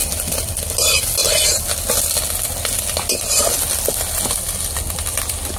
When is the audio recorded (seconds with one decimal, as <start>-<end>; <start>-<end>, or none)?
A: 0.0-5.6